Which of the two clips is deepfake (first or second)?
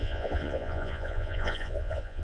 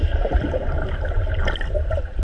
first